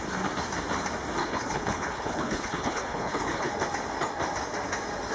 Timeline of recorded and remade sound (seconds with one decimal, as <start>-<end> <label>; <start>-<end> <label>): 0.0-1.2 recorded; 1.2-3.5 remade; 3.5-5.1 recorded